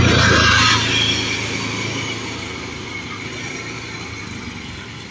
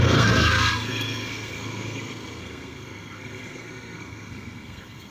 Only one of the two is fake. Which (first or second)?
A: second